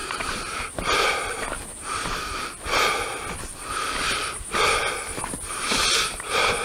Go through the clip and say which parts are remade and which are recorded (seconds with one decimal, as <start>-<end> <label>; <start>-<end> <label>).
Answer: 0.0-0.7 remade; 0.7-6.6 recorded

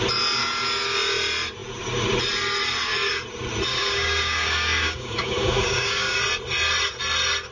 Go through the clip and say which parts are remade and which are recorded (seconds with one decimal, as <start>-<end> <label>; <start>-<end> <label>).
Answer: 0.0-3.7 recorded; 3.7-6.2 remade; 6.2-7.5 recorded

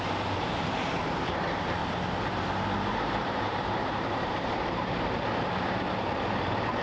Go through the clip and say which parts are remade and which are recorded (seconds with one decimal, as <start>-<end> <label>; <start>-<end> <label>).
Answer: 0.0-1.8 remade; 1.8-2.9 recorded; 2.9-5.3 remade; 5.3-6.8 recorded